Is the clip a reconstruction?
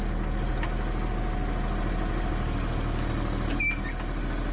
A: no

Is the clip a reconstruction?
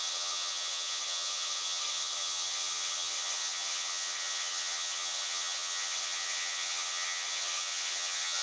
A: yes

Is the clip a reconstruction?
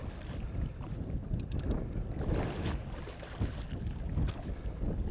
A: no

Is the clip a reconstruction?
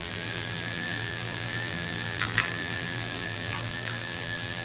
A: yes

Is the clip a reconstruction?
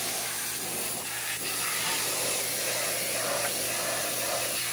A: no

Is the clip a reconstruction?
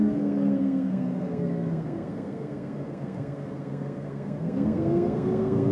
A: yes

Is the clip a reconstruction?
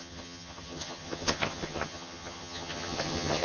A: yes